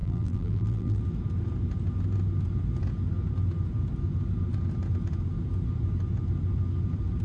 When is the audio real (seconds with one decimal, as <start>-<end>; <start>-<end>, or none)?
1.0-7.2